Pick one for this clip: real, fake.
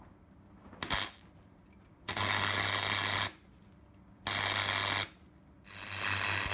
real